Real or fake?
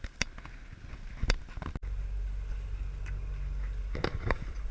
real